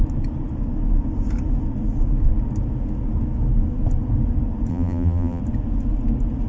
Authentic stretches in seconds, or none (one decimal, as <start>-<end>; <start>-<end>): 0.0-4.7; 5.4-6.5